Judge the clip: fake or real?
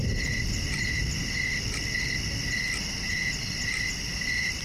real